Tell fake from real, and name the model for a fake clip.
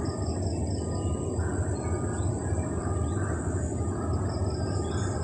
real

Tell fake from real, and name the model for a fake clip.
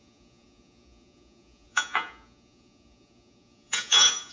fake, vocoder, Vocos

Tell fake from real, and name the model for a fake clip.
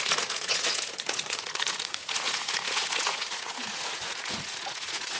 fake, vocoder, Vocos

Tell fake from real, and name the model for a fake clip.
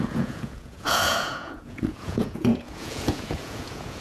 fake, vocoder, Vocos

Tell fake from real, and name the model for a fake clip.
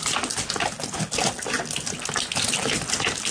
real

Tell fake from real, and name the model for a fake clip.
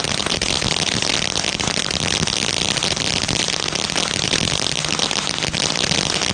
real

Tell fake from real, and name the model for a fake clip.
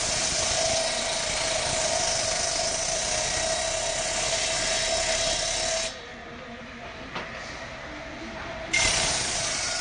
real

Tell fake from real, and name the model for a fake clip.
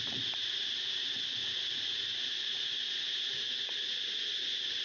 fake, vocoder, Vocos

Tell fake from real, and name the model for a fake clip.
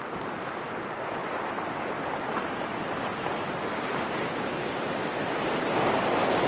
real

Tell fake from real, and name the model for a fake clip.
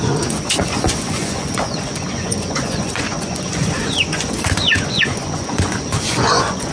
fake, vocoder, Vocos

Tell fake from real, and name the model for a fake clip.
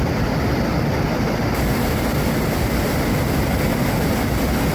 real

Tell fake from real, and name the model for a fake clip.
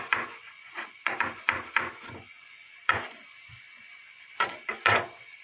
fake, vocoder, Vocos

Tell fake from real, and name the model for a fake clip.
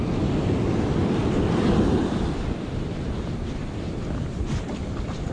real